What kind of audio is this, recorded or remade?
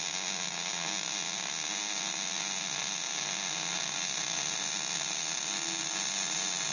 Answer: recorded